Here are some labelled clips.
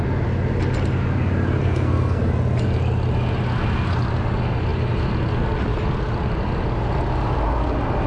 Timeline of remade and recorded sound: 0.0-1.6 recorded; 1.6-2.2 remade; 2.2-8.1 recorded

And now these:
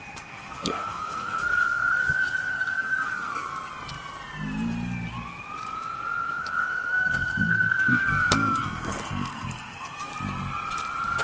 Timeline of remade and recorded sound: 0.0-3.5 remade; 3.5-6.4 recorded; 6.4-10.1 remade; 10.1-11.2 recorded